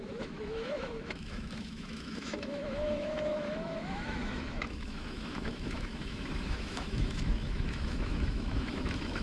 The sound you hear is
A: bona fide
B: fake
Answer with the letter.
B